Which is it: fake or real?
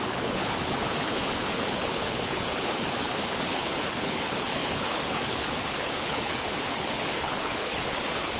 fake